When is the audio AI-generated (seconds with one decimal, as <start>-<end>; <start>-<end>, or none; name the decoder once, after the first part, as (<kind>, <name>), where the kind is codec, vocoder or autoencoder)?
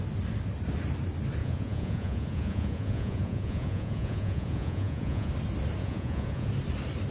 1.4-5.3 (vocoder, Vocos); 5.8-6.5